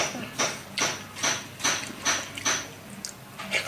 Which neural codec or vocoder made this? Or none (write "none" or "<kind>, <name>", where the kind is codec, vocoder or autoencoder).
none